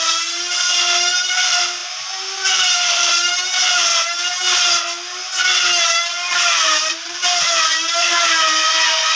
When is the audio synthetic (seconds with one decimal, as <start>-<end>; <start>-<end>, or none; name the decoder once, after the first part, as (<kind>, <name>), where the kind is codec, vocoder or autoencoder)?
0.0-3.9 (vocoder, BigVGAN v2); 5.8-9.2